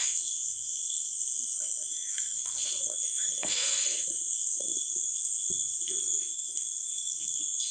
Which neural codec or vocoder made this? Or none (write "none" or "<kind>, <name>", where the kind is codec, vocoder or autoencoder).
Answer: codec, SNAC